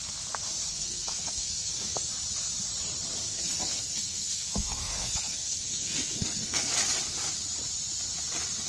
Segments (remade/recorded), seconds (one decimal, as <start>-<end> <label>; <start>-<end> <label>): 0.0-0.7 recorded; 0.7-2.1 remade; 2.1-3.3 recorded; 3.3-6.7 remade; 6.7-8.7 recorded